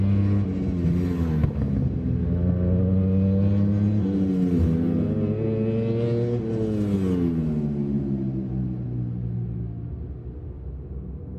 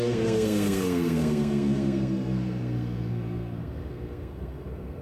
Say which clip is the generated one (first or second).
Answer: second